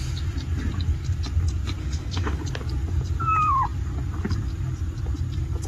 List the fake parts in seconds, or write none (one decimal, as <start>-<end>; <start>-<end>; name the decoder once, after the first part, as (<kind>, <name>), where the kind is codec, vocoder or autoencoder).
1.8-2.4 (autoencoder, DAC-VAE)